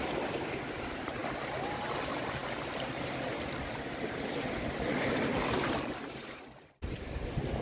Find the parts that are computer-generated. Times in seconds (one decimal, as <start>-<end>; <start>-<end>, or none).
0.0-7.6